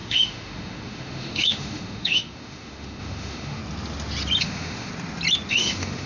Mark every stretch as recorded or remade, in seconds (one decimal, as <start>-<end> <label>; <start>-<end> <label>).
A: 0.0-3.6 remade; 3.6-4.4 recorded; 4.4-4.9 remade; 4.9-5.5 recorded; 5.5-6.1 remade